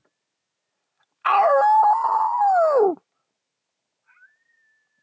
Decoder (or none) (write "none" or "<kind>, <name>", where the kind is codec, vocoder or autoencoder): none